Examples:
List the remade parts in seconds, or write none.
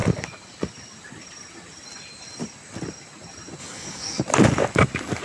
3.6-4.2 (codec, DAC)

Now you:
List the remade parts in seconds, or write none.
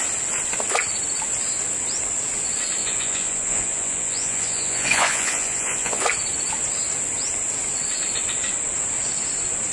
2.8-6.0 (vocoder, Vocos)